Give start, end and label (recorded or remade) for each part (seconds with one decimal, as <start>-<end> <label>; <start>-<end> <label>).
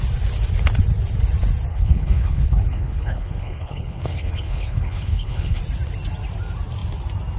0.0-1.7 recorded; 1.7-5.6 remade; 5.6-7.4 recorded